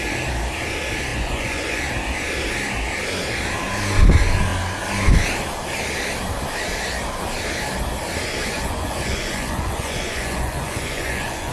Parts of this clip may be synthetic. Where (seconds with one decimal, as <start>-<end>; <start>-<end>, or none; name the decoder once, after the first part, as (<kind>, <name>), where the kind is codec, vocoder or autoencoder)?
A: 1.1-1.8 (vocoder, Vocos); 8.4-11.5